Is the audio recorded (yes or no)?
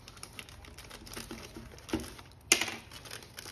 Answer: yes